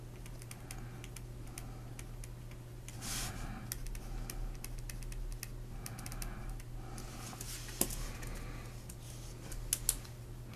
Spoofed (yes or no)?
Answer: no